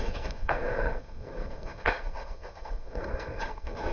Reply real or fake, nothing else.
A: fake